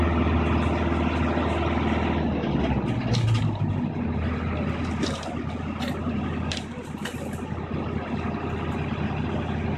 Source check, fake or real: real